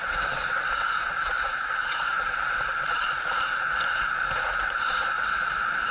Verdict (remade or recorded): remade